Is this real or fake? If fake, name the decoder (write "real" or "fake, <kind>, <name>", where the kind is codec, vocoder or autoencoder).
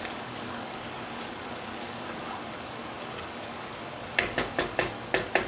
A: fake, codec, DAC